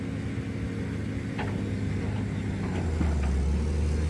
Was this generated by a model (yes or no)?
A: no